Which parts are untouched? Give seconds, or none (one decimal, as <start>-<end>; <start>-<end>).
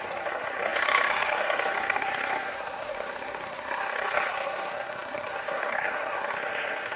none